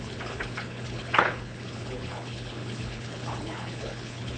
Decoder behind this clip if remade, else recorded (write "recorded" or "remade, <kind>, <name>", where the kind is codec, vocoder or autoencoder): remade, codec, HILCodec